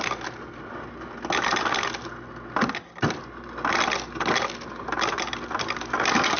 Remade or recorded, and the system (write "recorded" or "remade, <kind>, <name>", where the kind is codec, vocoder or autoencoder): recorded